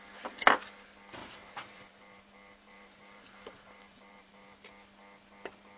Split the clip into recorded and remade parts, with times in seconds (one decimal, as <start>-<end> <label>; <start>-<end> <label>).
0.0-1.2 recorded; 1.2-4.7 remade; 4.7-5.8 recorded